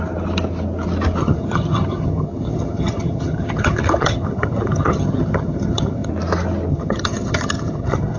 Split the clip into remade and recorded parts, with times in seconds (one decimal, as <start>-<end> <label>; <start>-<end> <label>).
0.0-1.2 recorded; 1.2-6.1 remade; 6.1-6.7 recorded; 6.7-8.2 remade